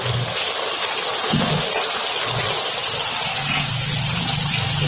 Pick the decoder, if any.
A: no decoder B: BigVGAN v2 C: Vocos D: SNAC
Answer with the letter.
A